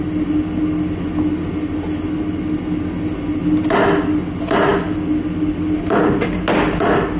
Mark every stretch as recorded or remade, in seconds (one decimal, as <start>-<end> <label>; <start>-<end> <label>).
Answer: 0.0-7.2 recorded